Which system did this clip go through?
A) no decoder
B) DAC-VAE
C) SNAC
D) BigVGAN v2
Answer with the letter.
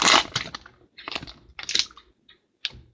A